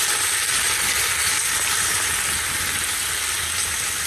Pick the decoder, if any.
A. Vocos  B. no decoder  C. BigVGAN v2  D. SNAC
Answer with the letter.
B